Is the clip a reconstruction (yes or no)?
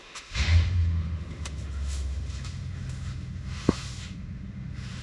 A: yes